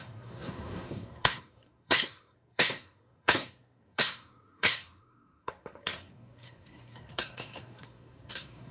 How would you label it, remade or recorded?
remade